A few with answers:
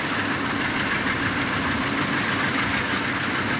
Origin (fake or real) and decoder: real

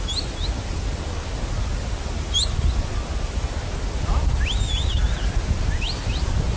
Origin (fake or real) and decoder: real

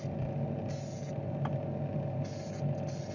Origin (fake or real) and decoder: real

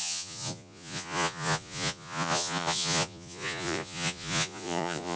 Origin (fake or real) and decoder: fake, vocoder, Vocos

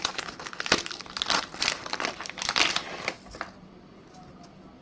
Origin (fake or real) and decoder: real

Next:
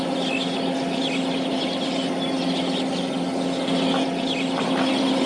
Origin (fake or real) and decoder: real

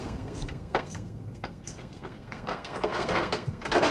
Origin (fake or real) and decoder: fake, codec, SNAC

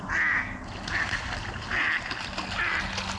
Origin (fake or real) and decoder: real